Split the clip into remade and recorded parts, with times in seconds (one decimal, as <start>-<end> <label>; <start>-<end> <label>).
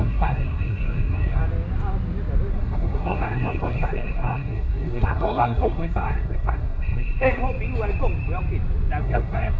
0.0-1.4 remade; 1.4-2.5 recorded; 2.5-7.4 remade; 7.4-9.0 recorded; 9.0-9.6 remade